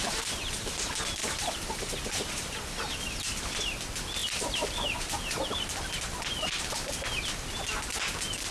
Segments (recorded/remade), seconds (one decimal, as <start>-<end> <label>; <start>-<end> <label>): 0.0-1.2 recorded; 1.2-2.6 remade; 2.6-4.2 recorded; 4.2-5.5 remade; 5.5-8.5 recorded